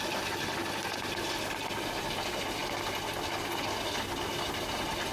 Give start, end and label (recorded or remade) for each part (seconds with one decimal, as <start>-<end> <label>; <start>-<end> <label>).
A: 0.0-5.1 recorded

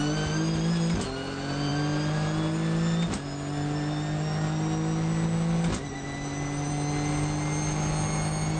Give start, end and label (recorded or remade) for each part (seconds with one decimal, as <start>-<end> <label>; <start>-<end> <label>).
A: 0.0-8.6 recorded

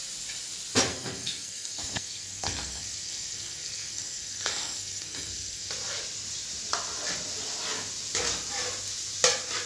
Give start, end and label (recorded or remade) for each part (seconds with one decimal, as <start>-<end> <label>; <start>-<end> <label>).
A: 0.0-0.9 recorded; 0.9-5.7 remade; 5.7-9.7 recorded

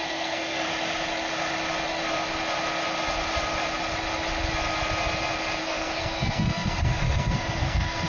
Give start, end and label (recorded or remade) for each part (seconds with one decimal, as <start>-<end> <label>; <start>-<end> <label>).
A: 0.0-0.7 remade; 0.7-5.6 recorded; 5.6-8.1 remade

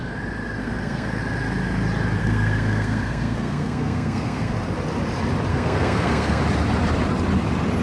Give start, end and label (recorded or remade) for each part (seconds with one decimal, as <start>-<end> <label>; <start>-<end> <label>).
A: 0.0-0.6 recorded; 0.6-1.2 remade; 1.2-2.2 recorded; 2.2-4.5 remade; 4.5-5.5 recorded; 5.5-6.4 remade; 6.4-7.8 recorded

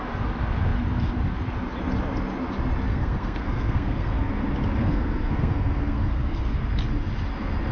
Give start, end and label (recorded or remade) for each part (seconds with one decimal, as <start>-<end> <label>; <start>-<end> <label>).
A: 0.0-2.9 recorded; 2.9-4.3 remade; 4.3-4.8 recorded; 4.8-6.6 remade; 6.6-7.7 recorded